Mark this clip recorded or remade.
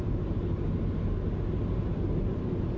recorded